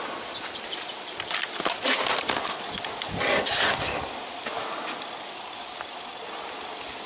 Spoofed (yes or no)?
no